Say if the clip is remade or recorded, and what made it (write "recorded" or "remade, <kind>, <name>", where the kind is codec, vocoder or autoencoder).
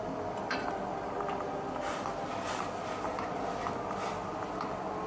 recorded